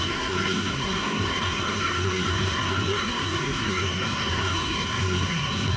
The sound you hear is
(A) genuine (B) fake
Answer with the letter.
B